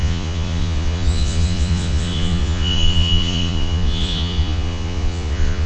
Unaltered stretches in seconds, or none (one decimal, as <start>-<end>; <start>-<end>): none